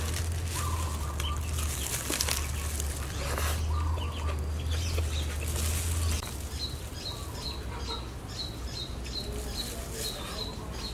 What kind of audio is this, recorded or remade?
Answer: recorded